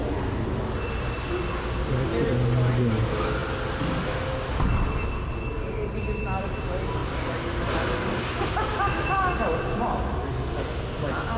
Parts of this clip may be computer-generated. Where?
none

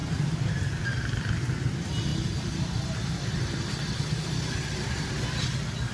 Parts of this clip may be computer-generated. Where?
none

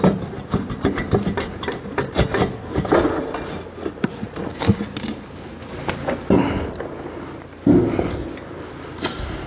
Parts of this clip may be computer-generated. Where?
none